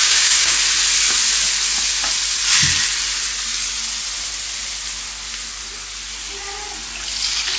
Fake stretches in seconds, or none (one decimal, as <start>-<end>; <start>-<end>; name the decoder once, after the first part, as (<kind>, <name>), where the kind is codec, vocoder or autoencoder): 0.0-0.6 (codec, DAC)